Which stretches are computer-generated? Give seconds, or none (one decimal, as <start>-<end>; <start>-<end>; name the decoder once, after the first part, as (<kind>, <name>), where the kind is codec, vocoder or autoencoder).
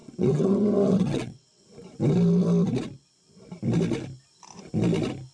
0.0-1.6 (vocoder, WaveNeXt)